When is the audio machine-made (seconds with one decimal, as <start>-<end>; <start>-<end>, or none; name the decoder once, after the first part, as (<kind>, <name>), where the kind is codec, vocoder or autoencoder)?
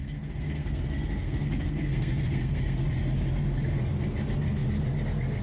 0.0-2.8 (codec, SNAC)